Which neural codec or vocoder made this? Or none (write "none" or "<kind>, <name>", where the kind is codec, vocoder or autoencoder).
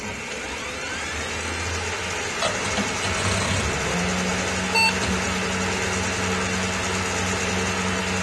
none